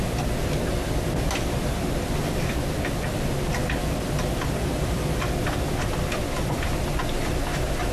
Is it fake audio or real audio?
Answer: real